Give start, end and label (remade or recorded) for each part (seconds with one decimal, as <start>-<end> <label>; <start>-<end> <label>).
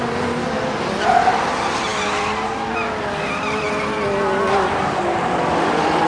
0.0-6.1 recorded